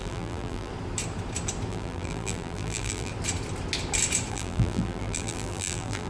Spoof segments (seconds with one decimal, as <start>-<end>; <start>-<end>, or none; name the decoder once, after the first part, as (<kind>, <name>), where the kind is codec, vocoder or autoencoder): 0.0-0.7 (vocoder, BigVGAN v2); 1.7-3.1; 4.3-6.1